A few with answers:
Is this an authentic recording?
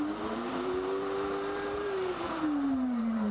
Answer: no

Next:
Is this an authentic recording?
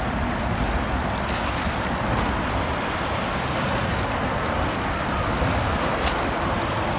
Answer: yes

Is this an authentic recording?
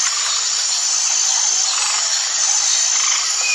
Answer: yes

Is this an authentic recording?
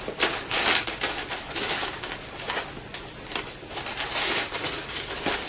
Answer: no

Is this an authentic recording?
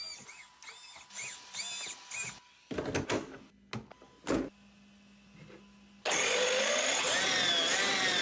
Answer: yes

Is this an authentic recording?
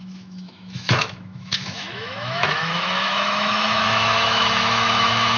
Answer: no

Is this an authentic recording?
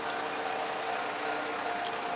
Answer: yes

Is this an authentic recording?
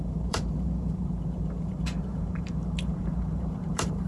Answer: no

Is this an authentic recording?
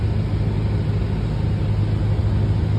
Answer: yes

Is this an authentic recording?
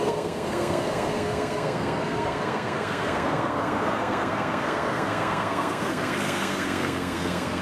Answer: no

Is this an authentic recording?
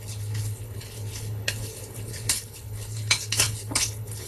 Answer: no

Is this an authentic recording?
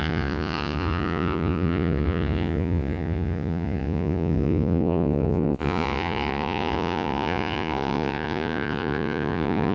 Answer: no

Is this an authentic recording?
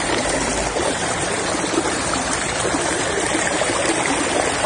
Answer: no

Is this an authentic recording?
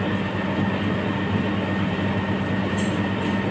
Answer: yes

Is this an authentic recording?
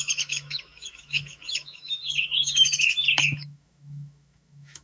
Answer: no